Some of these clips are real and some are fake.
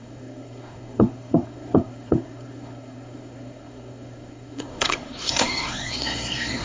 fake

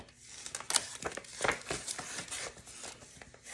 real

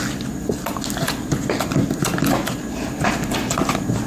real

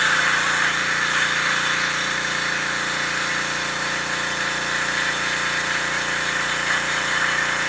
real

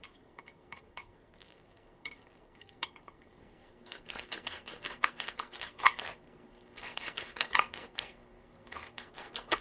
fake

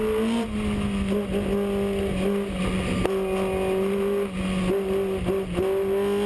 real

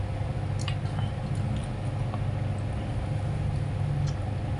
real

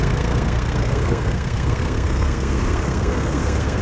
fake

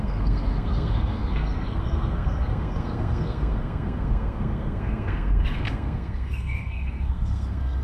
fake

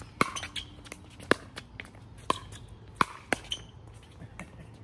real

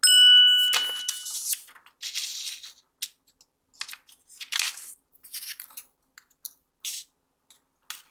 real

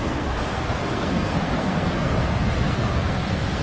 fake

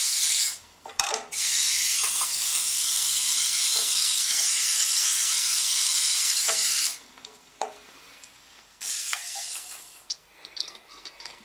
fake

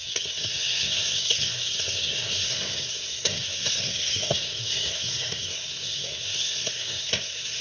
fake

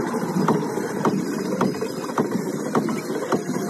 real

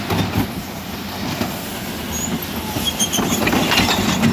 real